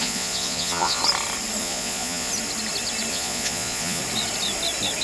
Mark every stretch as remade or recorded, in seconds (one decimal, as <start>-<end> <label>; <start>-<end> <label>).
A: 0.0-1.0 remade; 1.0-1.6 recorded; 1.6-2.3 remade; 2.3-3.1 recorded; 3.1-4.0 remade; 4.0-5.0 recorded